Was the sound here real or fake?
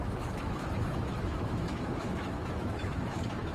fake